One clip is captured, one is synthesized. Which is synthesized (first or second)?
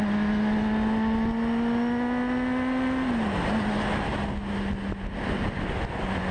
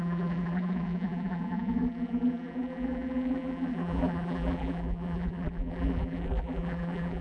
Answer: second